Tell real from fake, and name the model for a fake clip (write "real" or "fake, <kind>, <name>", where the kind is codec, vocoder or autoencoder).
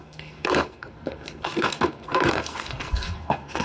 fake, codec, SNAC